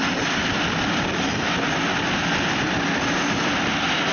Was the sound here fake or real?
real